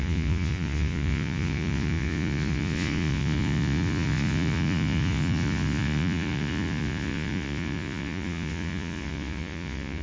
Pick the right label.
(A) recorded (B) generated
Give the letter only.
B